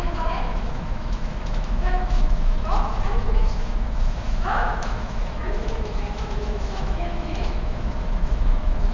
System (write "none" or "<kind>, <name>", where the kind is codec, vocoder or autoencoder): autoencoder, DAC-VAE